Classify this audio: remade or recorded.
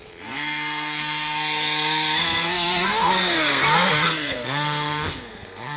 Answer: remade